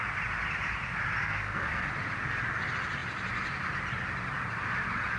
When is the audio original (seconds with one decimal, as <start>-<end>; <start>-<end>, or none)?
0.0-1.2; 1.9-5.2